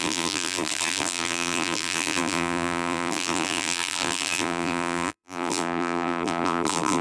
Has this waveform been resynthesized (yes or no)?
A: yes